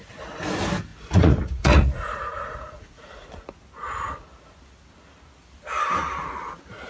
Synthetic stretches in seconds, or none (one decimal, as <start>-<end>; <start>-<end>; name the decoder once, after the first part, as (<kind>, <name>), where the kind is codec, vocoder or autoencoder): 0.9-3.3 (vocoder, Vocos)